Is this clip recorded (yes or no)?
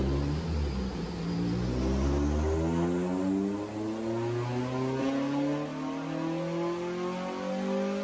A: yes